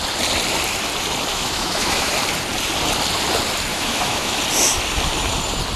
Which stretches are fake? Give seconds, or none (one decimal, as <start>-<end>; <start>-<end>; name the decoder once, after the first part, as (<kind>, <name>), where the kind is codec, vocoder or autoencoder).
1.3-2.1 (autoencoder, DAC-VAE); 3.7-4.4